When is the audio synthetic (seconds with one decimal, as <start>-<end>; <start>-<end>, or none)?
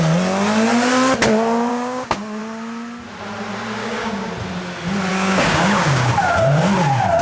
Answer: 1.7-2.4; 3.8-4.3; 5.1-6.1